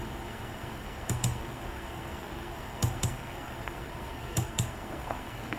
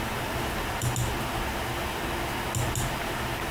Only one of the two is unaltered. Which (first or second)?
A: second